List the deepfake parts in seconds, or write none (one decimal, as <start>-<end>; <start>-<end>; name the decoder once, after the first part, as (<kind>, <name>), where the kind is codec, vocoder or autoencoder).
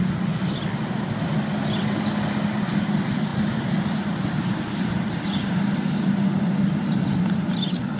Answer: none